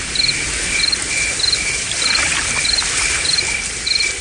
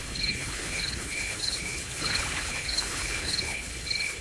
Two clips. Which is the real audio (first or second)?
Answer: first